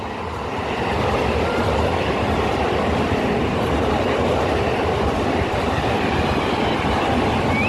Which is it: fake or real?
real